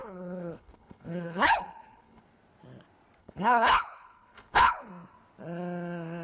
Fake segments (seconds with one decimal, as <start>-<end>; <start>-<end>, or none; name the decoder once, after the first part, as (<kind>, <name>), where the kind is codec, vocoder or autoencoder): 0.0-2.2 (codec, HILCodec); 3.2-4.9